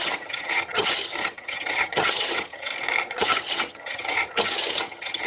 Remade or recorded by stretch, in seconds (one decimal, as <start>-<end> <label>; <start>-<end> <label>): 0.0-2.7 remade; 2.7-3.2 recorded; 3.2-5.3 remade